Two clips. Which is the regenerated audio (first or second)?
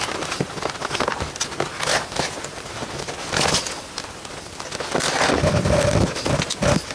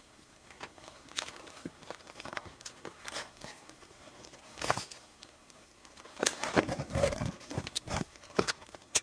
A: second